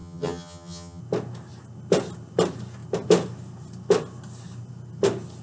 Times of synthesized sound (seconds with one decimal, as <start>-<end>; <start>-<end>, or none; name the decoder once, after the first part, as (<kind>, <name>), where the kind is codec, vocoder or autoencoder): 0.0-1.0 (vocoder, HiFi-GAN)